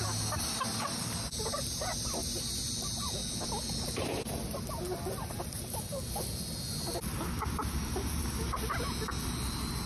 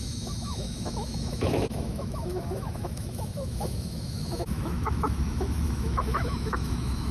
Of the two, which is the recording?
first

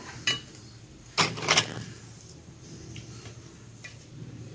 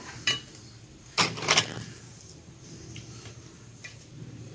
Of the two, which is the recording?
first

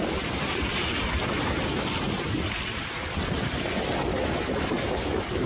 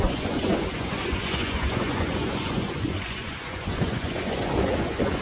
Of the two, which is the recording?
first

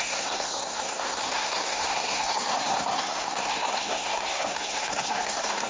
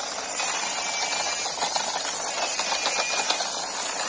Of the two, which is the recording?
second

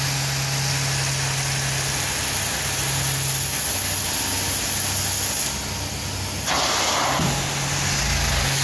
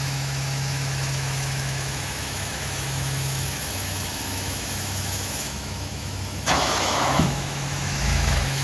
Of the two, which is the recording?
first